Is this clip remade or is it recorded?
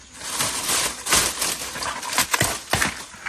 recorded